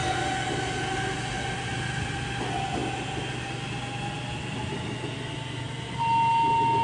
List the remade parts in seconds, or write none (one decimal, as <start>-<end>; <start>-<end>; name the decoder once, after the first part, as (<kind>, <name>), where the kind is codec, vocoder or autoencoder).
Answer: none